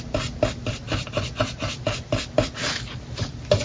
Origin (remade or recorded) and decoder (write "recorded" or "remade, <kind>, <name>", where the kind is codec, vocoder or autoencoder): recorded